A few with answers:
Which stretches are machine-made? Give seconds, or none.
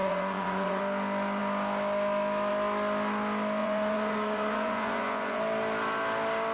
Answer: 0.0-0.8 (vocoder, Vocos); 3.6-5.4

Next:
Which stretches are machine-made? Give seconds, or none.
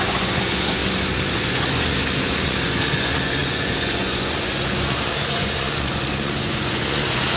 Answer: 0.0-0.8 (vocoder, Vocos); 1.3-7.4